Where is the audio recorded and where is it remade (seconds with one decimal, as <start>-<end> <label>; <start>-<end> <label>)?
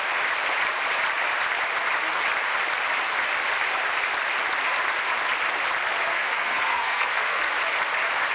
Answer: 0.0-6.1 recorded; 6.1-7.5 remade; 7.5-8.3 recorded